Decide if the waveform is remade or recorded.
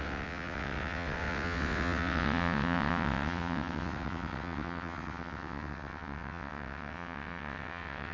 remade